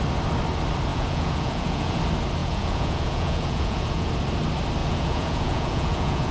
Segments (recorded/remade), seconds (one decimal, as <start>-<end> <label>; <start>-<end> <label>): 0.0-0.9 recorded; 0.9-2.0 remade; 2.0-2.4 recorded; 2.4-4.1 remade; 4.1-4.8 recorded; 4.8-6.3 remade